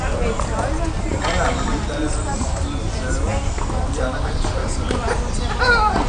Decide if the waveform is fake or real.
real